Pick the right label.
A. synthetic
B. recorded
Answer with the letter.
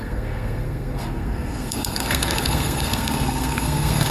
A